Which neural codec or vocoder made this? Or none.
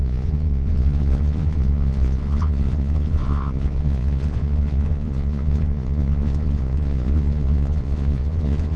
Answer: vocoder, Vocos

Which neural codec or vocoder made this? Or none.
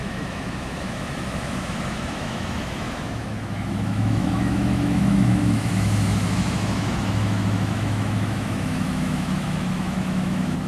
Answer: autoencoder, DAC-VAE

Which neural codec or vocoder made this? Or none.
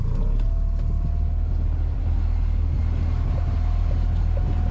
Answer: none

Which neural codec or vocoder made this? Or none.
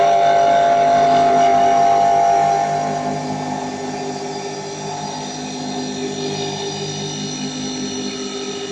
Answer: none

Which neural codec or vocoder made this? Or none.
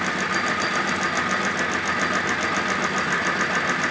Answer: none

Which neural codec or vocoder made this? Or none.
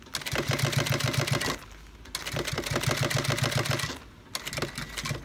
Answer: none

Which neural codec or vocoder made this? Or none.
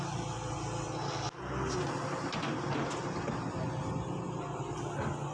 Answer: none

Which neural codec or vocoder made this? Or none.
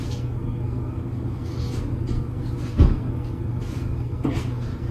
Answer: codec, SNAC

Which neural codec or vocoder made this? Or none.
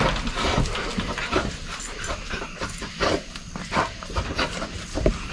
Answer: vocoder, BigVGAN v2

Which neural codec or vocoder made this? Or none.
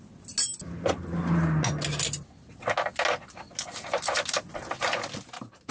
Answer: none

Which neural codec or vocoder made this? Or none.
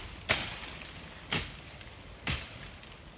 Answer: none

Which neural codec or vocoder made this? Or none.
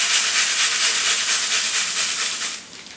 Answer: none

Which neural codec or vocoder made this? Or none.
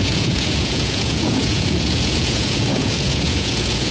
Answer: vocoder, Vocos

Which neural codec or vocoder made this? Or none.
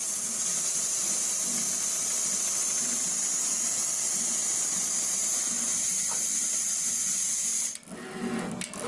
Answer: none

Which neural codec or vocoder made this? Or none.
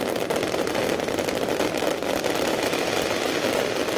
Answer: none